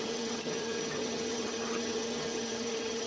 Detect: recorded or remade remade